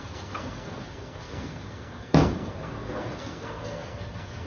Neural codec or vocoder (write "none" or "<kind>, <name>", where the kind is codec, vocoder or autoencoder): codec, SNAC